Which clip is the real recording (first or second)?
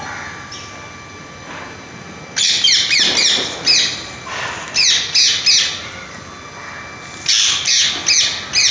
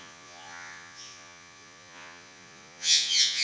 first